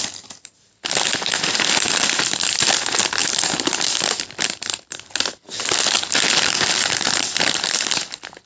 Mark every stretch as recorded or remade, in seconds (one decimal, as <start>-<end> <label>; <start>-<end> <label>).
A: 0.0-8.5 recorded